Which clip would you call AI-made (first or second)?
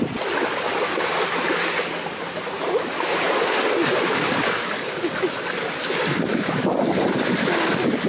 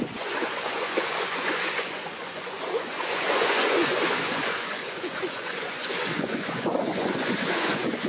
second